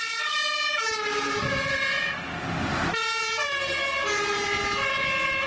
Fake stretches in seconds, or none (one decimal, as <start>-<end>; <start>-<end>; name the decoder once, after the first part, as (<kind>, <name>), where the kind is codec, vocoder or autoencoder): none